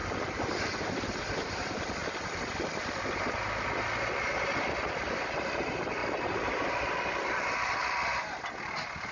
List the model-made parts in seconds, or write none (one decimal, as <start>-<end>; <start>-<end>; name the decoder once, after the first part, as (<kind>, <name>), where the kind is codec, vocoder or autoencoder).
6.0-6.7 (vocoder, BigVGAN v2)